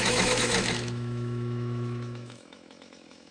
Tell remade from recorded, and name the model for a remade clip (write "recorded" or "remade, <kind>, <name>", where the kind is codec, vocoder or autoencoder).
remade, autoencoder, DAC-VAE